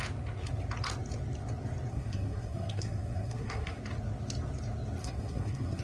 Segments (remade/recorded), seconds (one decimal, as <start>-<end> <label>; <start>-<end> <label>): 0.0-1.9 recorded; 1.9-3.8 remade; 3.8-5.0 recorded; 5.0-5.8 remade

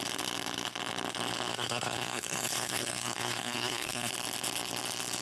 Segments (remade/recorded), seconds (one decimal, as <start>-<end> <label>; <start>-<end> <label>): 0.0-1.5 recorded; 1.5-4.1 remade; 4.1-5.2 recorded

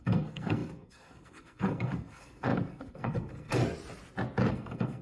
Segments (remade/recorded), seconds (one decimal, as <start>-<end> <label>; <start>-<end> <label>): 0.0-3.6 remade; 3.6-4.5 recorded; 4.5-5.0 remade

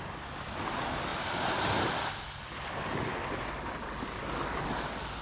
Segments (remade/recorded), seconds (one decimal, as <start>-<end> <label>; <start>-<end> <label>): 0.0-5.2 recorded

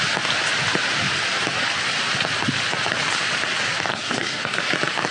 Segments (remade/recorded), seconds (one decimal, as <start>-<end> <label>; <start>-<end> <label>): 0.0-3.9 recorded; 3.9-4.6 remade; 4.6-5.1 recorded